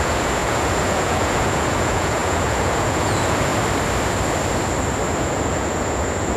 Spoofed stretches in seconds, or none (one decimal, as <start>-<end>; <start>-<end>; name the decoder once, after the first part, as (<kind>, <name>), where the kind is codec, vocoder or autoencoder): 0.0-3.5 (vocoder, Vocos); 5.2-6.4